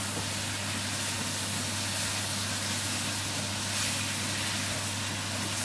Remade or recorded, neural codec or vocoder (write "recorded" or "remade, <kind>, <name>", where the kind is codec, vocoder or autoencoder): recorded